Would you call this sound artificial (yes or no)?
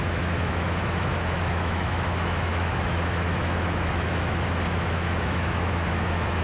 yes